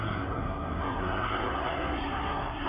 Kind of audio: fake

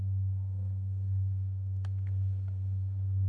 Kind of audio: fake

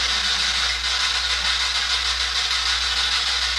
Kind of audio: real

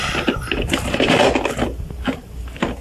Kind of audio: real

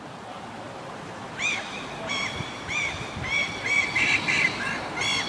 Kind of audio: real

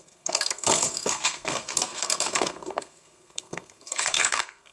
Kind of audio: fake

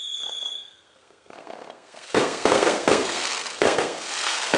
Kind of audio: fake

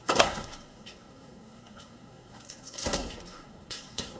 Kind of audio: fake